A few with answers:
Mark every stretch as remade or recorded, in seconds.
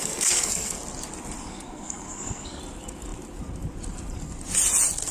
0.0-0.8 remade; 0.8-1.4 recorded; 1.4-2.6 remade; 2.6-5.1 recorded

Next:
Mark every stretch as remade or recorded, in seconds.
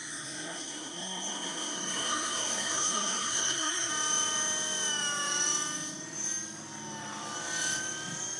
0.0-3.9 remade; 3.9-8.4 recorded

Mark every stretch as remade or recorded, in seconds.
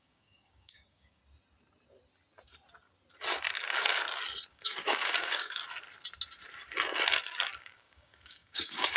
0.0-1.2 remade; 1.2-4.5 recorded; 4.5-5.6 remade; 5.6-7.6 recorded; 7.6-9.0 remade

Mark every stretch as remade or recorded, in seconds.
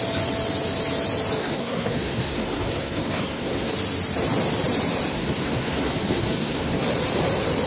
0.0-1.4 recorded; 1.4-3.7 remade; 3.7-5.1 recorded; 5.1-6.8 remade; 6.8-7.7 recorded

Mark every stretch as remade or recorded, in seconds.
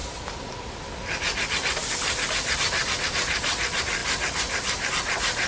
0.0-5.5 recorded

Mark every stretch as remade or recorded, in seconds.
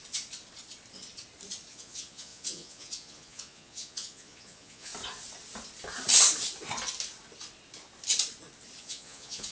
0.0-1.7 recorded; 1.7-4.9 remade; 4.9-8.8 recorded; 8.8-9.5 remade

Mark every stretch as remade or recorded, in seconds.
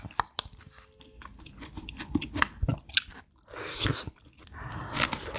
0.0-5.4 recorded